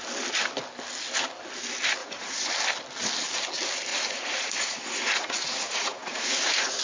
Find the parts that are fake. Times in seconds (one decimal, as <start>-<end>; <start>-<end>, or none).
2.0-2.5; 3.9-6.8